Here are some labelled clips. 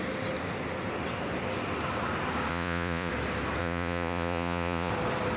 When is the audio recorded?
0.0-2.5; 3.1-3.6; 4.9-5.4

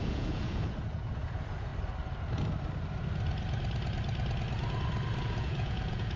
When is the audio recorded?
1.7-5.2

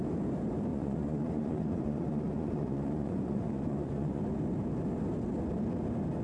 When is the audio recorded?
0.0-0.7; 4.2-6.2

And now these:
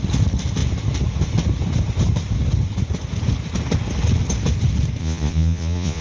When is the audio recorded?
0.0-5.0

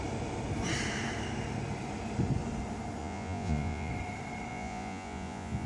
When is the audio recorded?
0.0-3.0; 3.9-4.5

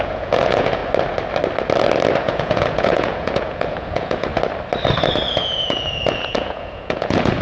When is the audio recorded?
0.8-2.2; 4.3-5.3